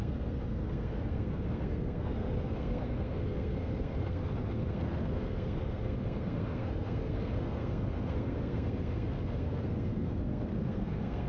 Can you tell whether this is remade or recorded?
remade